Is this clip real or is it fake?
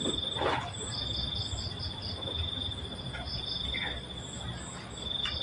real